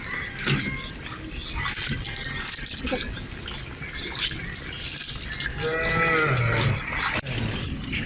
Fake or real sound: real